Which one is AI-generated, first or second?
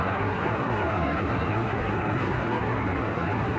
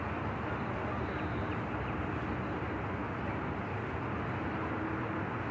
first